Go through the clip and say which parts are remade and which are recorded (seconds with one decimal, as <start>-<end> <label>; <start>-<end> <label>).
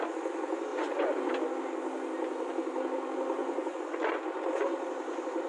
0.0-0.7 recorded; 0.7-1.3 remade; 1.3-3.4 recorded; 3.4-4.0 remade; 4.0-5.5 recorded